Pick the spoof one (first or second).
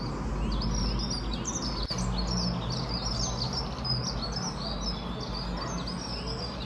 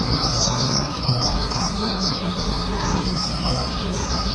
second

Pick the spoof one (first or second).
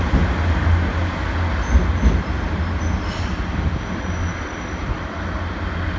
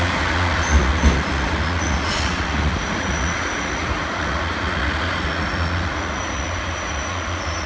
second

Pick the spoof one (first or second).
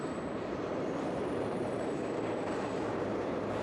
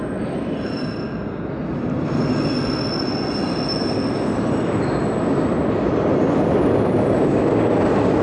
first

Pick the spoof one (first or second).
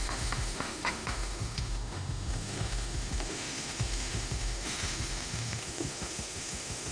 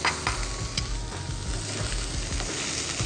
first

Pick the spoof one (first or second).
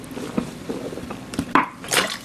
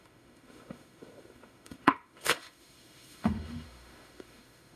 second